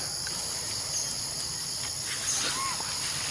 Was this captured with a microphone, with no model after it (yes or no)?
yes